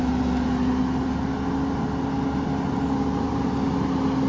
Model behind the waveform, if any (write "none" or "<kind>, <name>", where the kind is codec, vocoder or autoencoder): none